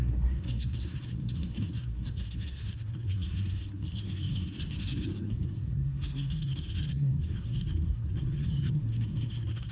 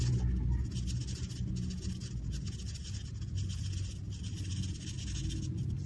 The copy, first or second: first